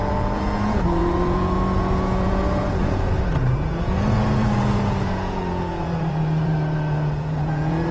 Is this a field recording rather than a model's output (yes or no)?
no